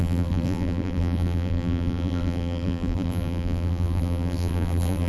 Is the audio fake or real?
fake